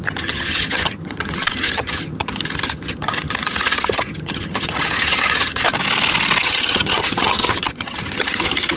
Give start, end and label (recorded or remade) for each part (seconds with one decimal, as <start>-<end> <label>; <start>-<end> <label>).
0.0-5.6 remade; 5.6-6.4 recorded; 6.4-8.8 remade